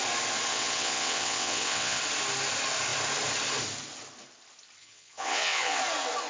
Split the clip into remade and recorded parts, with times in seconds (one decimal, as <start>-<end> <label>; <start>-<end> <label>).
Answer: 0.0-0.5 recorded; 0.5-2.0 remade; 2.0-4.8 recorded; 4.8-5.8 remade; 5.8-6.3 recorded